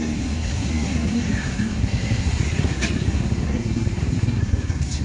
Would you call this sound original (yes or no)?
no